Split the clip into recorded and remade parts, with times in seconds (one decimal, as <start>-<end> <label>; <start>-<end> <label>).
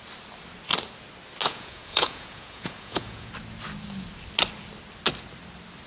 0.0-1.4 recorded; 1.4-3.3 remade; 3.3-5.9 recorded